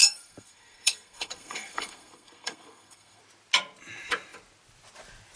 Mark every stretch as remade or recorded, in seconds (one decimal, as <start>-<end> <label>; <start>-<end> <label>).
0.0-3.2 remade; 3.2-5.4 recorded